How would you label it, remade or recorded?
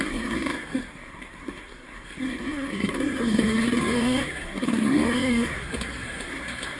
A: remade